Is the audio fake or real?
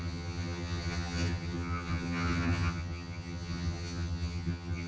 fake